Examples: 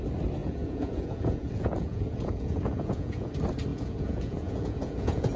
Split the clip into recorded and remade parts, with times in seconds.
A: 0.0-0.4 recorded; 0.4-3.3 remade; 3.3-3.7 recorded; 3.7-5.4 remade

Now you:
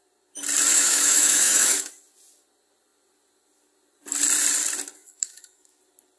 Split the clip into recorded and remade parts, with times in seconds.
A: 0.0-0.7 recorded; 0.7-1.9 remade; 1.9-5.0 recorded; 5.0-5.8 remade; 5.8-6.2 recorded

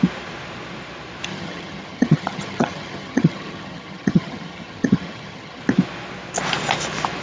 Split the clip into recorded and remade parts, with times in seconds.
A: 0.0-1.3 recorded; 1.3-5.6 remade; 5.6-7.2 recorded

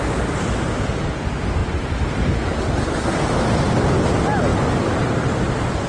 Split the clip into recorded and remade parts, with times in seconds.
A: 0.0-1.6 recorded; 1.6-2.6 remade; 2.6-4.5 recorded; 4.5-5.3 remade; 5.3-5.9 recorded

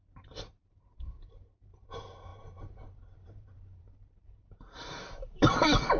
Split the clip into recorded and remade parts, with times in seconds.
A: 0.0-6.0 remade

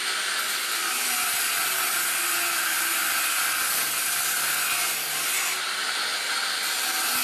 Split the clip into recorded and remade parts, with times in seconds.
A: 0.0-7.2 recorded

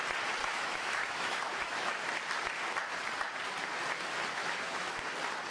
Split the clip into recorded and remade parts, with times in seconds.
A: 0.0-0.4 recorded; 0.4-2.0 remade; 2.0-4.4 recorded; 4.4-5.0 remade; 5.0-5.5 recorded